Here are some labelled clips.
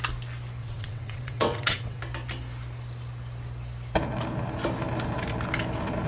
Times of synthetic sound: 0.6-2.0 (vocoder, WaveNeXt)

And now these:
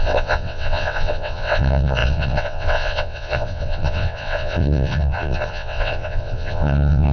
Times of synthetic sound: 0.0-7.1 (vocoder, WaveNeXt)

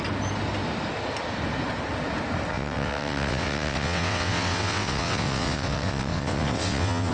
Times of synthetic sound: 2.5-7.1 (vocoder, WaveNeXt)